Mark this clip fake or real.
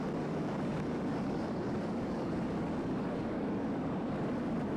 fake